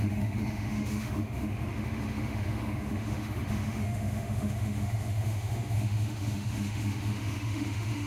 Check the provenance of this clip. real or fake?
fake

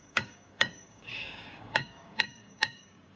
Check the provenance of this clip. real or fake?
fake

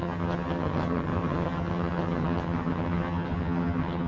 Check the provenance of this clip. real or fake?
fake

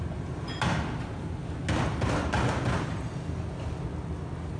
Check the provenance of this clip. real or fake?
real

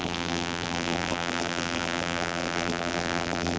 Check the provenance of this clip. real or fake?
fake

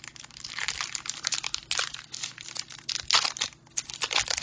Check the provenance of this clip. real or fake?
real